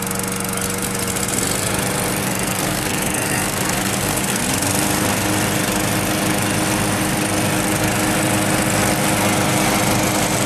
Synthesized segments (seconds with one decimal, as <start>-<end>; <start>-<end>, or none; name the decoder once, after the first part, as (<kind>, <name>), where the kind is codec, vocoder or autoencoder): 2.2-4.4 (codec, SNAC)